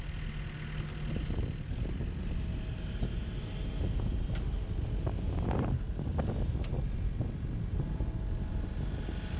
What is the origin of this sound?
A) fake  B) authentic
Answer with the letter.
B